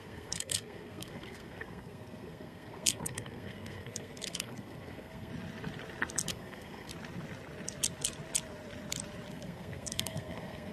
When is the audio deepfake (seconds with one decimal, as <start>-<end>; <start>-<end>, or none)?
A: 0.0-5.3; 6.3-6.9; 9.3-10.7